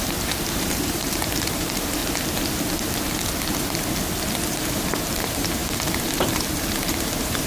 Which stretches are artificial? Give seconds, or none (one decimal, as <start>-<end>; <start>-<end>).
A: 0.0-2.0; 4.5-7.5